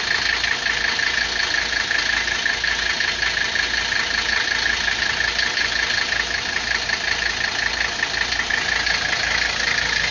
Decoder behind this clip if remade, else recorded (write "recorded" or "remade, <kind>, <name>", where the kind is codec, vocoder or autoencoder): recorded